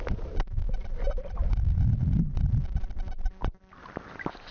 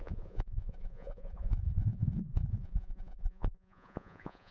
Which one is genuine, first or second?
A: first